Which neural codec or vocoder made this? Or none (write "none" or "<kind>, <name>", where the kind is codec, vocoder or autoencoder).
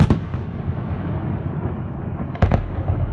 codec, DAC